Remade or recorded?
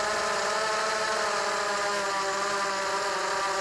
recorded